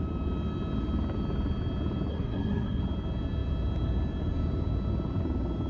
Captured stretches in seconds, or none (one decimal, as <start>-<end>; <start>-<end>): 0.0-2.1; 2.8-5.7